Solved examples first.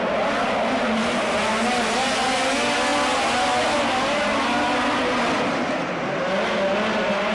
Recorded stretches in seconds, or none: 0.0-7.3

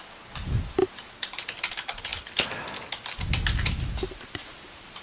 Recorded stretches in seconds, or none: 0.0-5.0

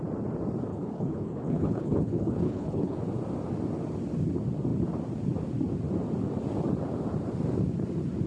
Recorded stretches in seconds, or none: 0.0-0.7; 3.0-8.3

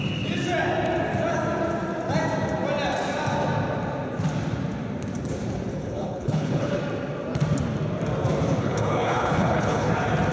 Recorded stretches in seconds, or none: 0.0-5.7; 6.8-8.6; 9.9-10.3

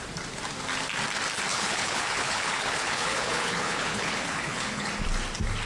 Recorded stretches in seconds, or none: 0.0-1.5; 4.9-5.7

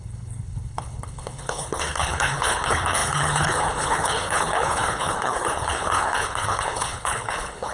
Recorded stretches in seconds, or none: none

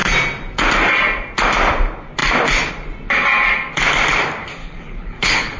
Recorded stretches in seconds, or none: 0.0-4.6

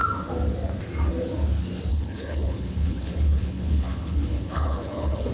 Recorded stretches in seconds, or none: 0.0-1.9